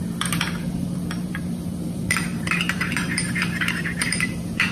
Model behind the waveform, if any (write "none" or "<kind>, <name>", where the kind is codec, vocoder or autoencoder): vocoder, BigVGAN v2